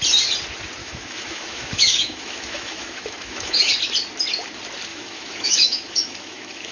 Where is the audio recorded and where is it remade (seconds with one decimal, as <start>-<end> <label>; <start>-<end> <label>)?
0.0-0.8 recorded; 0.8-3.7 remade; 3.7-4.9 recorded; 4.9-6.7 remade